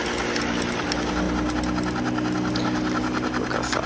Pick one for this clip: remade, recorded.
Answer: recorded